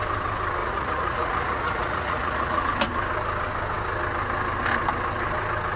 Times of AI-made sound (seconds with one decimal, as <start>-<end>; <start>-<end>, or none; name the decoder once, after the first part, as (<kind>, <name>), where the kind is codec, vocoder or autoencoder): 0.6-2.6 (vocoder, Vocos)